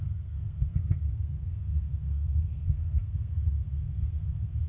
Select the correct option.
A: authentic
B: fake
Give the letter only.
B